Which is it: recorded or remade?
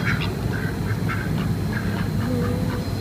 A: recorded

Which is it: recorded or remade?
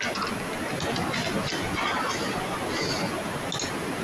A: recorded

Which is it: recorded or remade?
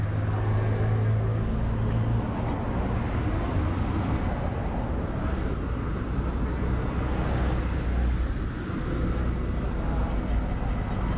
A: recorded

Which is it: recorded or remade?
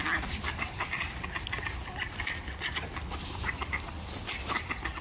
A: recorded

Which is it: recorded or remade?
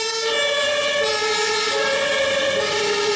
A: recorded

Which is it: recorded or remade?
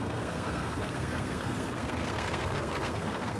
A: remade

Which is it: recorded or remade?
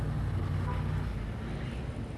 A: recorded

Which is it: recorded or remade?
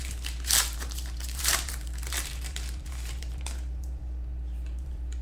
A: remade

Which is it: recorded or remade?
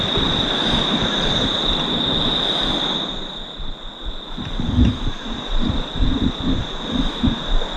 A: recorded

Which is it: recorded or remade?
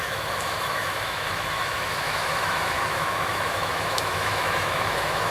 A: remade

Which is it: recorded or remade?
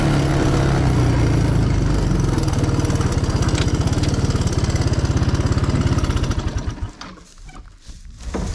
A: recorded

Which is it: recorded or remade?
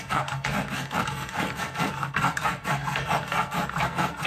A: remade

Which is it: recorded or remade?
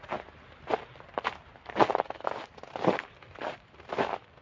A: recorded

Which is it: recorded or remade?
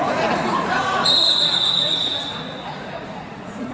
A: remade